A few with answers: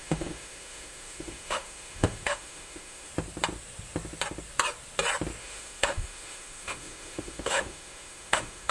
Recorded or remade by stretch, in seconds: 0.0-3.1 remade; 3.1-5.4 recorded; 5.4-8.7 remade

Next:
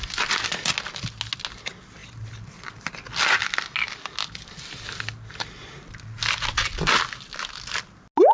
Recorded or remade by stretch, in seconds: 0.0-8.3 recorded

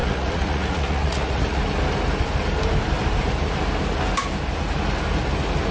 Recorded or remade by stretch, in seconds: 0.0-1.6 remade; 1.6-5.7 recorded

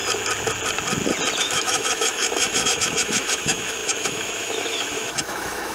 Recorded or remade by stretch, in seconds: 0.0-1.4 recorded; 1.4-5.7 remade

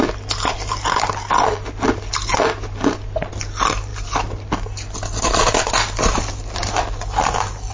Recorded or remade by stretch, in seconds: 0.0-7.7 recorded

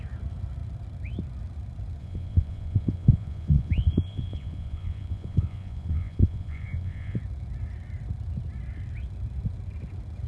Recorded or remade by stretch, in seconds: 0.0-2.0 recorded; 2.0-7.2 remade; 7.2-10.3 recorded